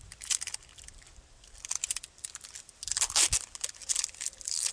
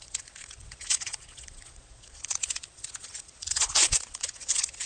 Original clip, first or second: first